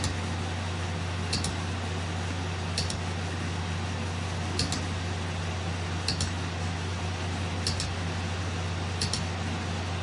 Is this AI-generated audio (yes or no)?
no